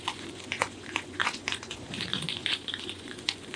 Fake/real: fake